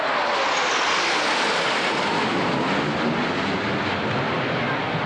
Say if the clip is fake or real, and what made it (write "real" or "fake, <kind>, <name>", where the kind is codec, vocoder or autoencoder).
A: real